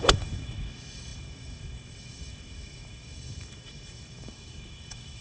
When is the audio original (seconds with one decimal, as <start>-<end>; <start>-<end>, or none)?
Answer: none